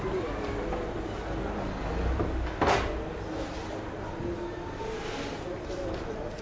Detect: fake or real real